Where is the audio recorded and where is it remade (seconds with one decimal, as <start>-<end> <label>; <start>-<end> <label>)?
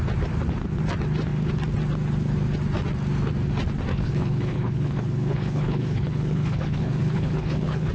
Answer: 0.0-3.9 recorded; 3.9-7.9 remade